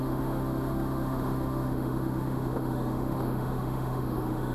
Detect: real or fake fake